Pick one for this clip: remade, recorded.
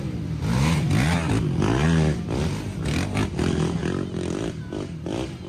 recorded